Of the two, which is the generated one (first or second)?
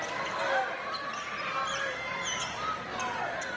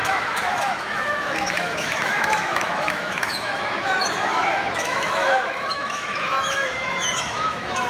second